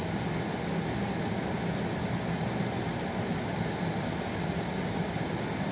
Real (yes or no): yes